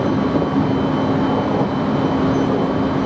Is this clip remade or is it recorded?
recorded